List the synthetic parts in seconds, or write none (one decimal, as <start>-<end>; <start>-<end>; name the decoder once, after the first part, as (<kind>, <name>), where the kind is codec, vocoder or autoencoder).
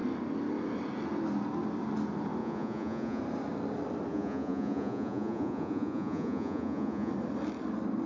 2.4-3.2 (vocoder, Vocos); 4.1-7.1